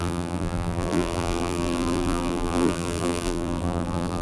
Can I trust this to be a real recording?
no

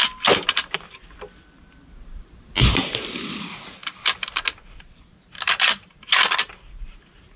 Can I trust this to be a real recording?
yes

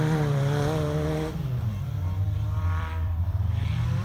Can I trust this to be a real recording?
no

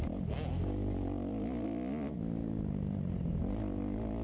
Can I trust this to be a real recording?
yes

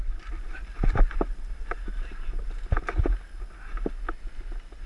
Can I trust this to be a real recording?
yes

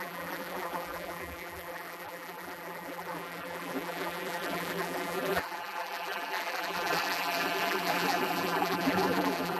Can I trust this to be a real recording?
no